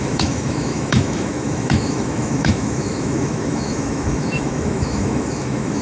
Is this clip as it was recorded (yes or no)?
no